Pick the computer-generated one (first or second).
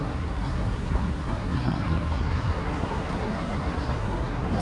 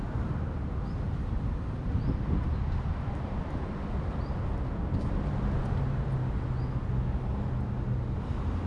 first